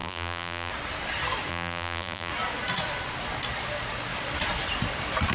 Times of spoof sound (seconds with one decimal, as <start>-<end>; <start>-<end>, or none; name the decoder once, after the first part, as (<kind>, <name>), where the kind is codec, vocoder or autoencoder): 0.0-0.7 (vocoder, BigVGAN v2); 1.5-2.3